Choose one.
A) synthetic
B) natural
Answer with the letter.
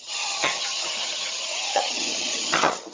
A